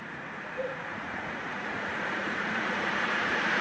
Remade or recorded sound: remade